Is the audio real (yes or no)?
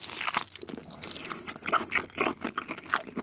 yes